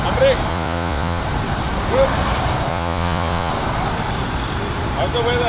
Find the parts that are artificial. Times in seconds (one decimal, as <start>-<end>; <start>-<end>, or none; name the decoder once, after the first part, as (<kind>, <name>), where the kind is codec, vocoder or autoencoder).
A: 0.5-1.2 (vocoder, Vocos); 2.7-3.5